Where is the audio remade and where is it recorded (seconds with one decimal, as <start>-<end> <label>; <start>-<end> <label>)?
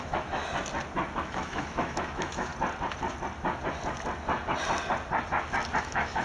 0.0-0.4 remade; 0.4-1.2 recorded; 1.2-2.5 remade; 2.5-5.8 recorded; 5.8-6.2 remade